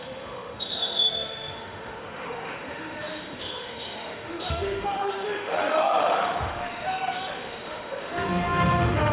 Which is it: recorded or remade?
remade